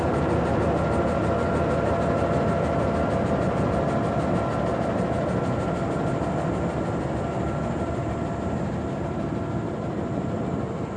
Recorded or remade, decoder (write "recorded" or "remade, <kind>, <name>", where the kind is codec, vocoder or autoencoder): recorded